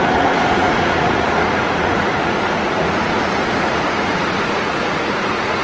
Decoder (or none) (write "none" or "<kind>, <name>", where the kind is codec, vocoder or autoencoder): vocoder, Vocos